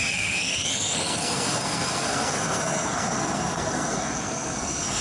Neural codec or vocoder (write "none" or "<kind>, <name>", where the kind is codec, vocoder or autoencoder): codec, SNAC